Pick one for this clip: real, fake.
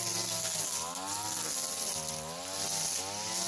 real